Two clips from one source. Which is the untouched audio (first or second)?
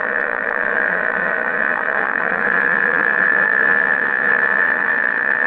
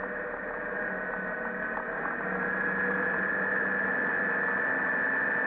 second